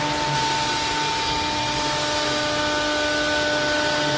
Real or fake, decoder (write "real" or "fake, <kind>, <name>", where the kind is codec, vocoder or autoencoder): real